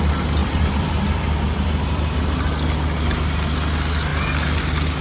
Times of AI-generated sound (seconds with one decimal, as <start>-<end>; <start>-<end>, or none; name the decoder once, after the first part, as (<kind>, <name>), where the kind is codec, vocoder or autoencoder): 0.4-2.2 (vocoder, BigVGAN v2)